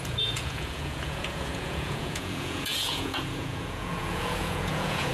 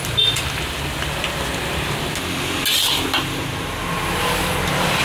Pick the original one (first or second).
second